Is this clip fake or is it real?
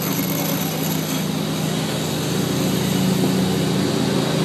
real